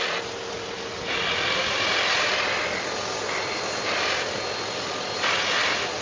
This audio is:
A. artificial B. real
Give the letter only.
B